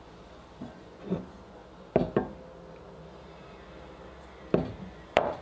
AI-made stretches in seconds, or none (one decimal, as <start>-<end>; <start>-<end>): 0.0-1.6; 4.8-5.4